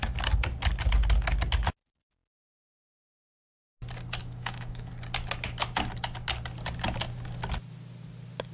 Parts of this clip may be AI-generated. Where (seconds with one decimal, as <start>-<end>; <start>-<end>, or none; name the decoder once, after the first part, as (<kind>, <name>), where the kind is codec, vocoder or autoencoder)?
4.2-4.9 (autoencoder, DAC-VAE)